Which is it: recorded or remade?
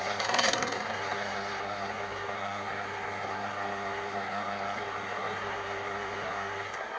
remade